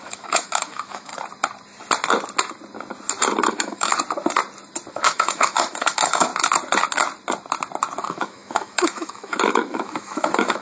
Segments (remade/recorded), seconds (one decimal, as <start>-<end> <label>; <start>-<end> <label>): 0.0-1.1 remade; 1.1-3.5 recorded; 3.5-3.9 remade; 3.9-4.9 recorded; 4.9-6.3 remade; 6.3-8.1 recorded; 8.1-10.6 remade